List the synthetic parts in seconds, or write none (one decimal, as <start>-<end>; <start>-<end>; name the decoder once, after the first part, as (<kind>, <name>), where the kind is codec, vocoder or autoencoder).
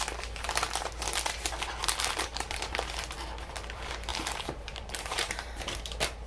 1.8-2.6 (vocoder, BigVGAN v2); 4.1-5.8